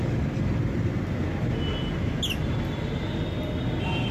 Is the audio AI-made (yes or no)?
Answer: no